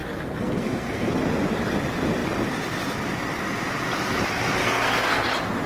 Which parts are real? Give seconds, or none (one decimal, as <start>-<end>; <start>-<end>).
1.1-4.6; 5.2-5.7